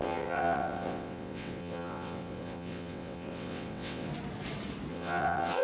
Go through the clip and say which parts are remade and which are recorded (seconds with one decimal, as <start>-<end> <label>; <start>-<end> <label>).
0.0-4.1 remade; 4.1-4.9 recorded; 4.9-5.6 remade

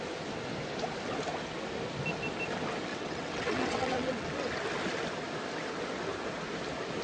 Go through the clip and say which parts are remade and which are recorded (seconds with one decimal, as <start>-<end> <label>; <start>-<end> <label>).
0.0-2.9 recorded; 2.9-4.5 remade; 4.5-7.0 recorded

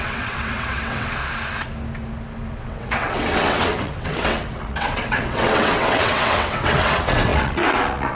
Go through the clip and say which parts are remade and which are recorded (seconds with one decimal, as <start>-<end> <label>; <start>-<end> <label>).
0.0-1.2 remade; 1.2-2.6 recorded; 2.6-8.1 remade

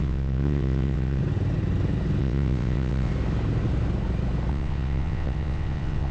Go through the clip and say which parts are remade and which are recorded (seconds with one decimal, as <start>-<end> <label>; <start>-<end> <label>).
0.0-1.2 remade; 1.2-2.2 recorded; 2.2-3.1 remade; 3.1-4.5 recorded; 4.5-6.1 remade

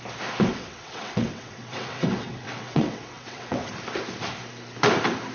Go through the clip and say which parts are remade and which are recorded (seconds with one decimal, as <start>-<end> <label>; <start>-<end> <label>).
0.0-0.5 recorded; 0.5-3.7 remade; 3.7-5.3 recorded

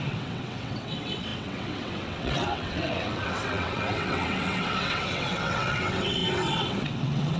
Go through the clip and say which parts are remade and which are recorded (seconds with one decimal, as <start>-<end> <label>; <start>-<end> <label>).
0.0-7.4 remade

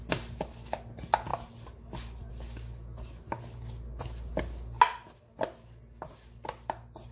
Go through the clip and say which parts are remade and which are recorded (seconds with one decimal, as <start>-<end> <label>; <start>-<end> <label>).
0.0-7.1 recorded